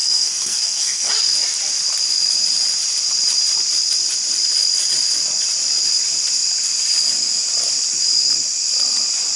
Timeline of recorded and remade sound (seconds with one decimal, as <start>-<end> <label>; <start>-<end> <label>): 0.0-1.1 remade; 1.1-9.4 recorded